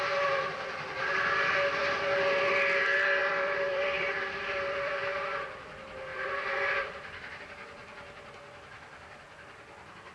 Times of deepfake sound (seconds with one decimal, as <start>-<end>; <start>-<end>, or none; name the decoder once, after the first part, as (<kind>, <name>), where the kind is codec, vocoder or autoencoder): 3.2-5.4 (vocoder, BigVGAN v2); 6.1-7.4